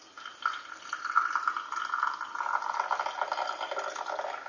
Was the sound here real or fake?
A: real